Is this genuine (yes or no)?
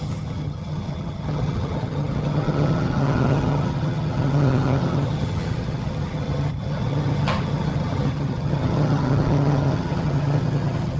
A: no